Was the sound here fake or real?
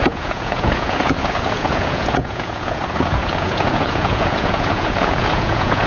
fake